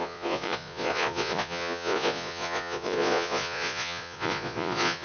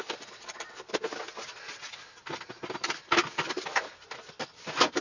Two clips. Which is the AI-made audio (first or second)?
first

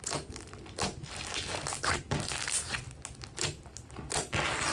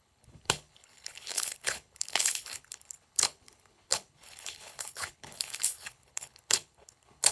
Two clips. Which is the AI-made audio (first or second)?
second